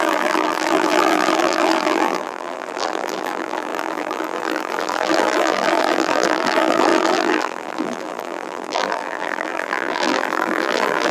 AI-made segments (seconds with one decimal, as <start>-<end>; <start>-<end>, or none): 0.0-11.1